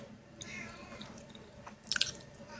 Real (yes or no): yes